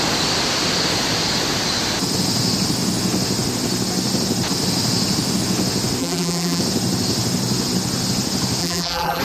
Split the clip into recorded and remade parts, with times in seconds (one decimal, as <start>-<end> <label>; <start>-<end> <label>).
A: 0.0-6.0 recorded; 6.0-6.6 remade; 6.6-8.6 recorded; 8.6-9.2 remade